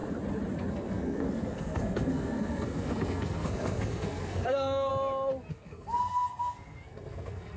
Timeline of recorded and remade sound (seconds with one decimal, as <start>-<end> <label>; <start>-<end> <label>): 0.0-0.7 recorded; 0.7-4.9 remade; 4.9-5.5 recorded; 5.5-7.6 remade